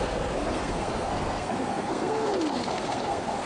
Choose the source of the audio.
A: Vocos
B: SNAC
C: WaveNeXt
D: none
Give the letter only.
B